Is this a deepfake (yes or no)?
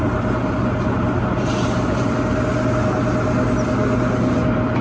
no